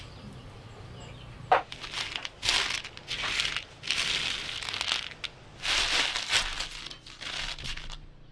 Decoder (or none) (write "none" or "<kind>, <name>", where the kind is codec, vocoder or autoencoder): none